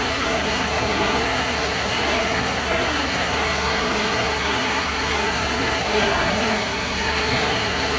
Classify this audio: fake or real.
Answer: fake